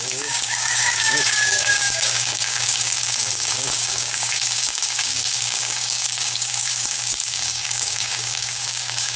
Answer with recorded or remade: remade